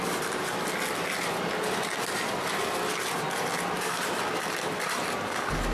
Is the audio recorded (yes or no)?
yes